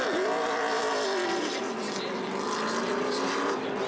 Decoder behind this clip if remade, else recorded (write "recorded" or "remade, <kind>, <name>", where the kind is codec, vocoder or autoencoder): recorded